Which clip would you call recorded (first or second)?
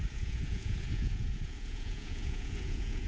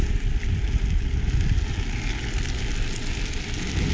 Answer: second